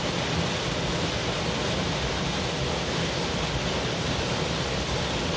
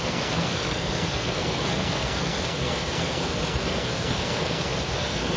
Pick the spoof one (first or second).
second